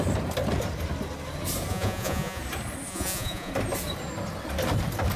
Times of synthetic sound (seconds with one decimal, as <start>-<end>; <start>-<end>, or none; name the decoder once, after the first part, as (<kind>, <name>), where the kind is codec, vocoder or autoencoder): 1.7-2.4 (vocoder, Vocos); 2.9-3.5